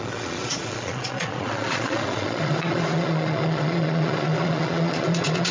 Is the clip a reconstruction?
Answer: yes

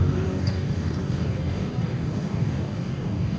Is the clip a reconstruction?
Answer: yes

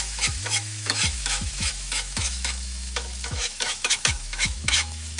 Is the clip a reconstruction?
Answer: yes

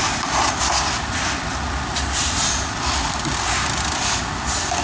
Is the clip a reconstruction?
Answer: yes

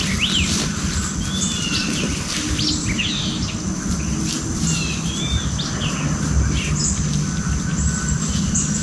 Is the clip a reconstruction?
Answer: yes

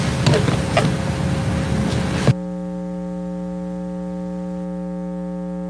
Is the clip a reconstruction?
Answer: no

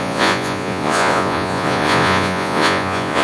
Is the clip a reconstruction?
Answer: yes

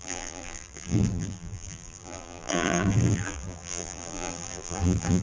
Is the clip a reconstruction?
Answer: yes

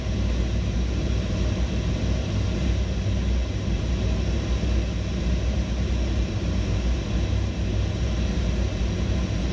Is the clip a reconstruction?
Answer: no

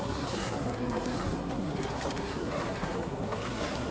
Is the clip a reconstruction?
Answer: yes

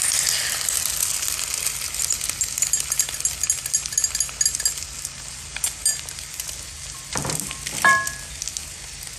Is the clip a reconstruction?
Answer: no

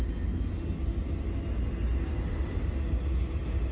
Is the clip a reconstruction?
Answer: no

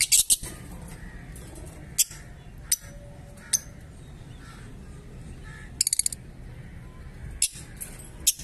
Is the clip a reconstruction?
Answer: no